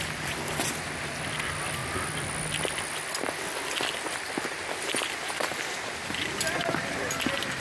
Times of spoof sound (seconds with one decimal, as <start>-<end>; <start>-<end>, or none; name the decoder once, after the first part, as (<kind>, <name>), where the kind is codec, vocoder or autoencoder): none